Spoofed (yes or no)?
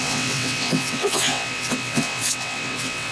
yes